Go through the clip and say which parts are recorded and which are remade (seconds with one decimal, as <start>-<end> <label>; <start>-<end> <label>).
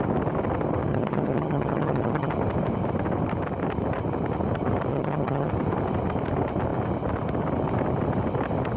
0.0-0.9 recorded; 0.9-2.3 remade; 2.3-4.9 recorded; 4.9-5.5 remade; 5.5-8.8 recorded